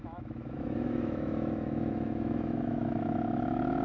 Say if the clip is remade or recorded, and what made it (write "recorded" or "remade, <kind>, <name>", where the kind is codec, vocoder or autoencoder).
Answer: remade, autoencoder, DAC-VAE